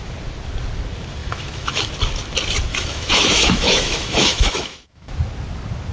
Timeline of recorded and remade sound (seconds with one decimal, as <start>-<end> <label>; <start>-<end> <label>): 0.0-1.2 recorded; 1.2-1.9 remade; 1.9-2.7 recorded; 2.7-5.1 remade; 5.1-5.9 recorded